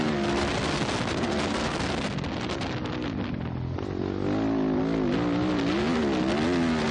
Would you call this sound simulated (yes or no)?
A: no